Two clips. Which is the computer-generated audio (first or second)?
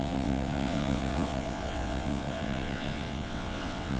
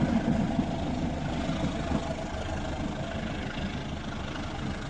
first